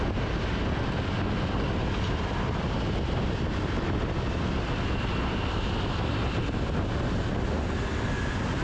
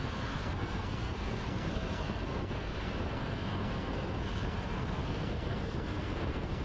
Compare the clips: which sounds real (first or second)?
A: first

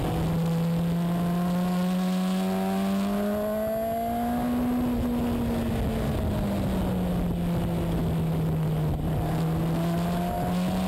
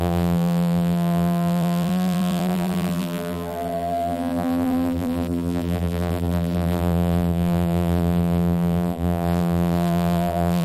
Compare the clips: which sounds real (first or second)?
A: first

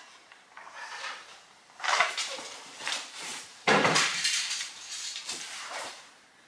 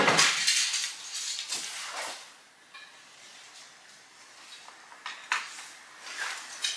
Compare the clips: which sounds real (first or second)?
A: second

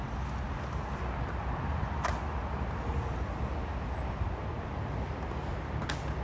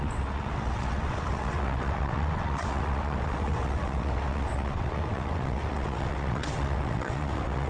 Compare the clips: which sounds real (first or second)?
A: first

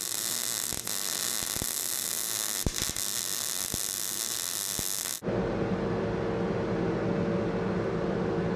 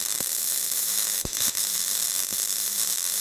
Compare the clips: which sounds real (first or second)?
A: first